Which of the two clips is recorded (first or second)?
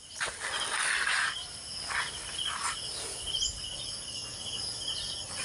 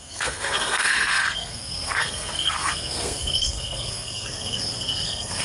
first